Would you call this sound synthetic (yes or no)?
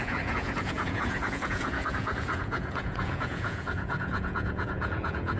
yes